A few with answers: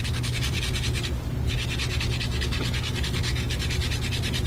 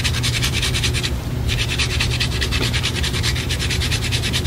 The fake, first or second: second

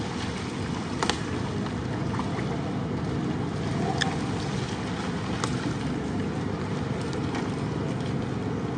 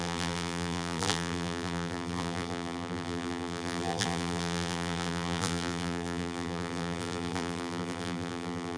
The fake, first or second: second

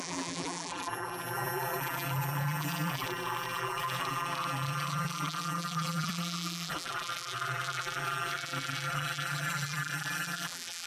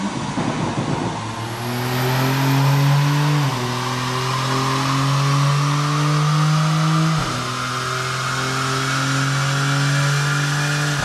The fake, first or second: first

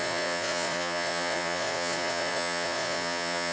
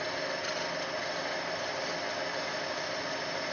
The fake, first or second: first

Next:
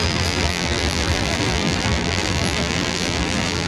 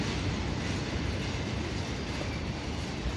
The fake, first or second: first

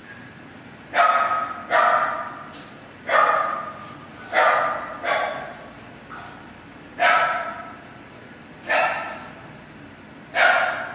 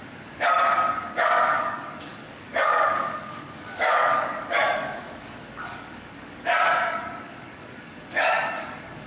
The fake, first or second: second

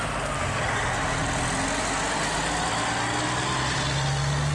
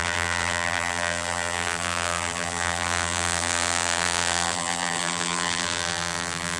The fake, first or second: second